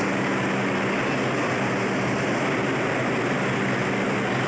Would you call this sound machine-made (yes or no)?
no